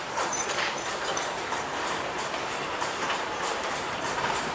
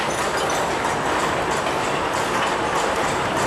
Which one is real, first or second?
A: second